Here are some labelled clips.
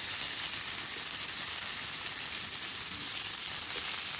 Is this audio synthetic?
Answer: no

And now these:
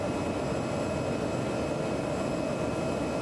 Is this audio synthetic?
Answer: no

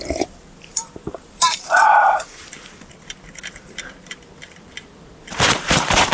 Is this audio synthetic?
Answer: yes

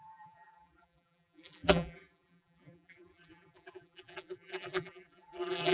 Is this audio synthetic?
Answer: yes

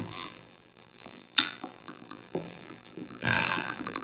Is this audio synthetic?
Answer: yes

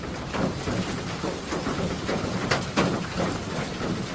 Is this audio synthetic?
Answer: yes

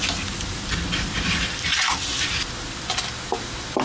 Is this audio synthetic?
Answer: no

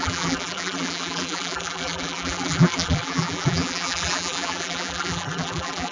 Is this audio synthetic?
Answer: yes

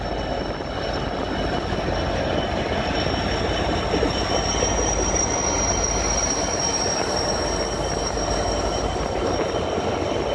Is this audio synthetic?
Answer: no